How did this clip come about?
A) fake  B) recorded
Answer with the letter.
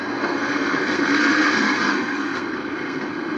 A